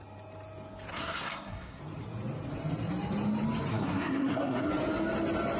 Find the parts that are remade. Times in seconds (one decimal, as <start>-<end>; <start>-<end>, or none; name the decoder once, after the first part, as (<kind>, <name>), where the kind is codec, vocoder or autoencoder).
0.9-1.8 (codec, SNAC); 3.7-4.7